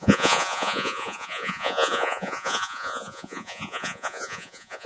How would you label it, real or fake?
fake